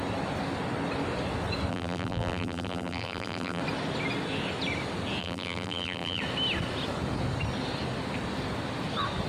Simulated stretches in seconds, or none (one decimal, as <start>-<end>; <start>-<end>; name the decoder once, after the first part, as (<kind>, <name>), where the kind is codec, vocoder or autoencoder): 1.7-3.6 (vocoder, BigVGAN v2); 5.2-6.2